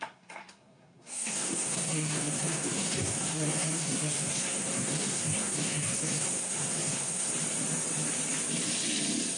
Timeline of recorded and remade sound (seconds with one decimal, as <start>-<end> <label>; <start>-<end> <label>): 0.0-7.3 remade; 7.3-9.4 recorded